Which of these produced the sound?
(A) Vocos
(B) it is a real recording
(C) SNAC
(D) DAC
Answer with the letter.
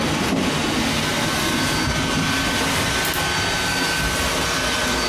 B